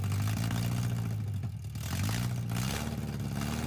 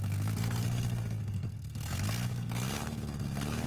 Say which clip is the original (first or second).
first